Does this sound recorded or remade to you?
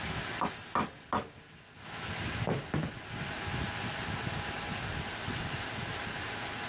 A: recorded